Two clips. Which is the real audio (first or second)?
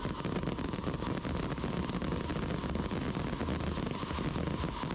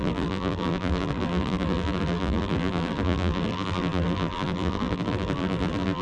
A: first